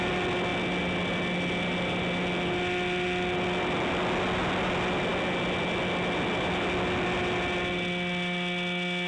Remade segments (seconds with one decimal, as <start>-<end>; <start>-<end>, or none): none